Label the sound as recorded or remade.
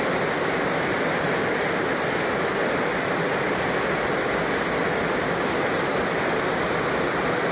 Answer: recorded